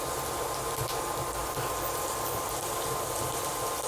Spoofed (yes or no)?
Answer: no